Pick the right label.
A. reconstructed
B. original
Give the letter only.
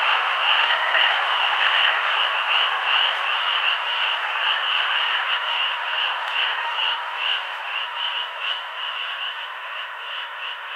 A